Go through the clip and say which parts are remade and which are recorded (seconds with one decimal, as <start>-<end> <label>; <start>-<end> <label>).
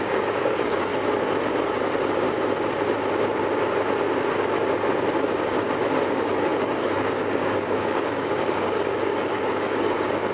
0.0-0.9 remade; 0.9-6.1 recorded; 6.1-10.3 remade